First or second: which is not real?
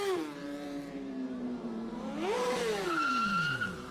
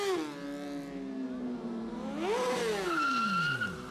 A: first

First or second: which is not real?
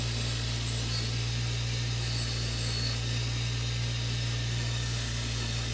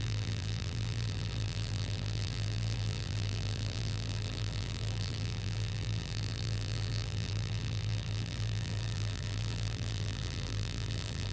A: second